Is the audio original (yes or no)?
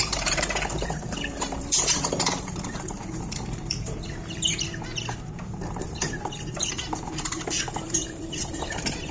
no